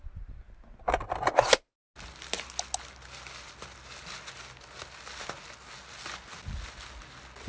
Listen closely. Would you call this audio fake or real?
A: real